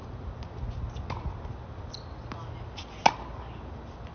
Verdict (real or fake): real